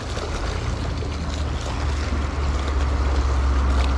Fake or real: real